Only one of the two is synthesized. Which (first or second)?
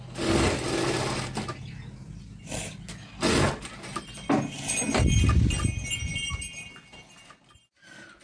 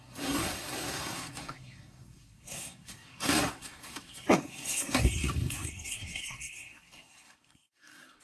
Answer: second